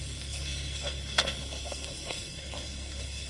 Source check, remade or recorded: remade